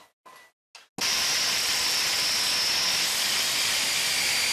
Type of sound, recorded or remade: recorded